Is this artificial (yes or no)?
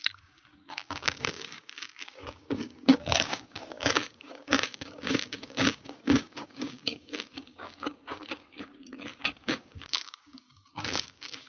yes